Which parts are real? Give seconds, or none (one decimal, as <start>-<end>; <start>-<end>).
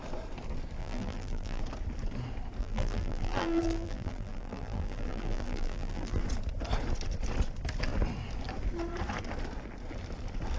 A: 0.0-0.8; 1.6-2.6; 6.2-10.6